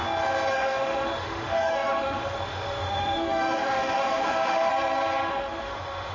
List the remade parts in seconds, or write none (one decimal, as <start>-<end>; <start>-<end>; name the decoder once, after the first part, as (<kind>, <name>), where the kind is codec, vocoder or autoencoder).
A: 0.5-4.7 (autoencoder, DAC-VAE); 5.3-6.1